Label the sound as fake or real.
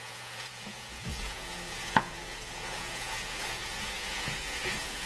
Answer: fake